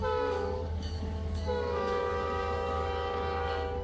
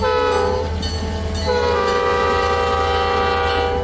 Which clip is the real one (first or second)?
second